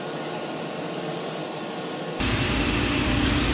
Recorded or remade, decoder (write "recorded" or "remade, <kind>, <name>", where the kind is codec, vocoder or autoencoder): remade, vocoder, BigVGAN v2